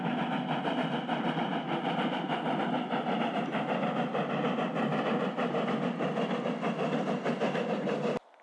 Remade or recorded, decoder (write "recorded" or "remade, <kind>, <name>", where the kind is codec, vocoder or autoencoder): recorded